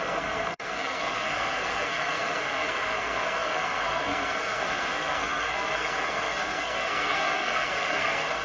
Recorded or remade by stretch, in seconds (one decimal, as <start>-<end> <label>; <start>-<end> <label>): 0.0-8.4 remade